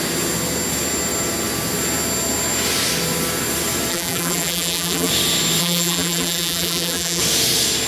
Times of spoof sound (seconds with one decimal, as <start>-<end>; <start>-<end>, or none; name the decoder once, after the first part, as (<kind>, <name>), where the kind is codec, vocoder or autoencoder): 3.9-5.1 (vocoder, BigVGAN v2); 5.6-7.2